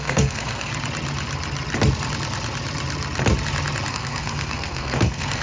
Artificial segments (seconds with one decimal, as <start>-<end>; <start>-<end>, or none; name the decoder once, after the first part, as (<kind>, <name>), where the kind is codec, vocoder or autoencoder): 0.0-0.7 (codec, SNAC); 3.9-5.4